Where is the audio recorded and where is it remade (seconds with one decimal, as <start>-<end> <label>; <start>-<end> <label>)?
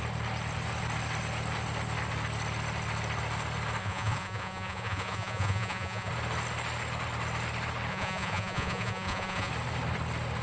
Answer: 0.0-3.8 recorded; 3.8-6.1 remade; 6.1-7.9 recorded; 7.9-9.5 remade; 9.5-10.4 recorded